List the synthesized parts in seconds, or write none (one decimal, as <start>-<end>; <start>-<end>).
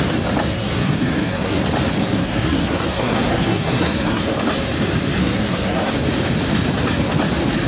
0.5-1.6; 2.0-4.2; 5.2-5.9